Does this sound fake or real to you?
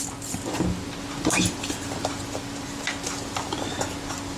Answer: real